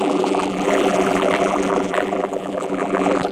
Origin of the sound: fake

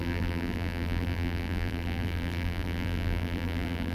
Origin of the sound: fake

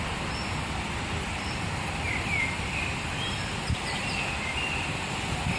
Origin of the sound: fake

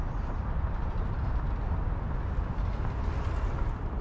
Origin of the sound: real